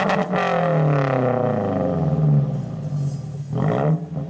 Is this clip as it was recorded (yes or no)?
yes